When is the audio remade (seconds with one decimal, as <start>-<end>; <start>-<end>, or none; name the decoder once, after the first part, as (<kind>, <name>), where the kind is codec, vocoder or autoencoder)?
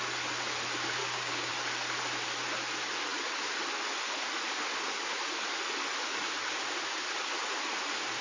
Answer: 1.0-1.5 (codec, DAC)